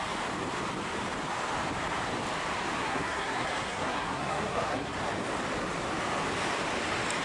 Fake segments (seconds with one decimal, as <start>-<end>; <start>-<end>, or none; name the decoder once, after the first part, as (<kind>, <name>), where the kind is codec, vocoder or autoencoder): 2.8-5.0 (codec, SNAC)

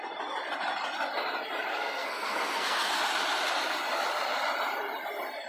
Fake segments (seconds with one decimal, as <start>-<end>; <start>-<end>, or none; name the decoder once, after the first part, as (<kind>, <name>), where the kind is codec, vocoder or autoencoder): 1.7-2.9 (codec, SNAC)

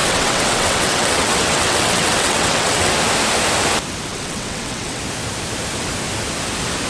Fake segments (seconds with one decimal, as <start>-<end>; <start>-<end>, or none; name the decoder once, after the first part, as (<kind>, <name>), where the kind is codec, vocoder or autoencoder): 0.0-2.9 (vocoder, WaveNeXt); 4.1-5.0

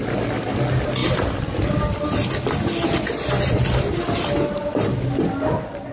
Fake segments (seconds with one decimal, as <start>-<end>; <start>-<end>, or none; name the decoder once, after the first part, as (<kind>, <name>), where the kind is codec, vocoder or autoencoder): none

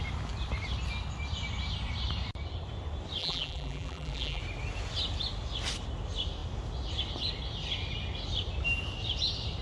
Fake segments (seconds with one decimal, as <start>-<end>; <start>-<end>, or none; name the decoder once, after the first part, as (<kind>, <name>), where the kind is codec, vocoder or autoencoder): 3.2-4.4 (vocoder, BigVGAN v2)

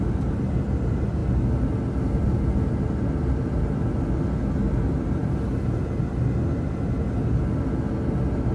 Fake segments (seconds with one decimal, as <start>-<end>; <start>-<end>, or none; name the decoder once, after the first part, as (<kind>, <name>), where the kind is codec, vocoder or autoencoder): none

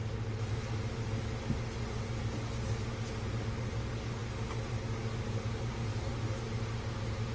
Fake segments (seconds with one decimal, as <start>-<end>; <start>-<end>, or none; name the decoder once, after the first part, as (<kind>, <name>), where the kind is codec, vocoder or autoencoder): 3.4-4.2 (codec, DAC); 4.7-6.1